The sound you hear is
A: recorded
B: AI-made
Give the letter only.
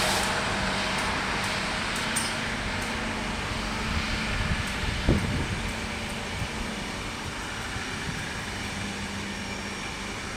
A